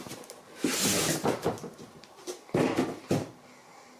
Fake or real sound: real